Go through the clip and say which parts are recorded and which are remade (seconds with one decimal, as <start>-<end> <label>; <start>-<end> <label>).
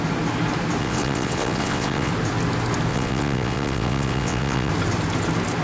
0.0-0.8 recorded; 0.8-2.1 remade; 2.1-2.9 recorded; 2.9-4.7 remade; 4.7-5.6 recorded